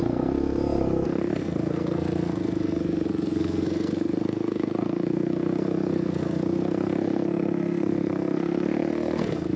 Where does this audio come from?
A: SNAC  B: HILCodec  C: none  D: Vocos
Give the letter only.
A